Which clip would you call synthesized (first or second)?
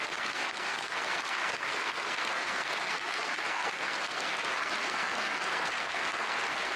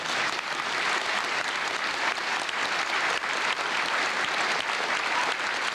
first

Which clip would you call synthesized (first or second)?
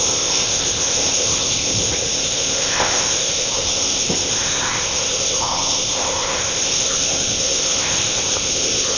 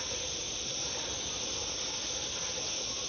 first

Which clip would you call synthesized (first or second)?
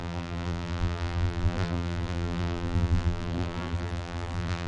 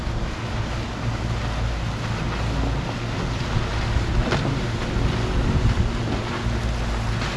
first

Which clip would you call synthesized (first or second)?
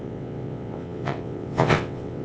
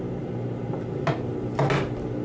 first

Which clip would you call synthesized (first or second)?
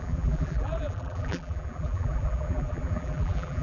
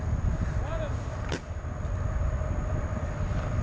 first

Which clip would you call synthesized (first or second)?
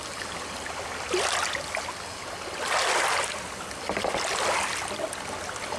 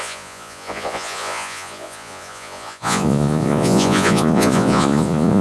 second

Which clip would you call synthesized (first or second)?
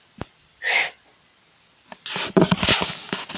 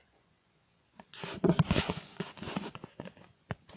second